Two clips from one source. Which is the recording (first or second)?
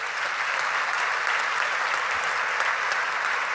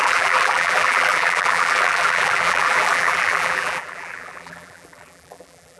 first